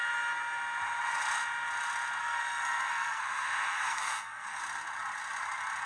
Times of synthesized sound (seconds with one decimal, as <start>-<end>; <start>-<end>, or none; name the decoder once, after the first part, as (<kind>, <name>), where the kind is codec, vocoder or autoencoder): 2.2-4.6 (codec, SNAC)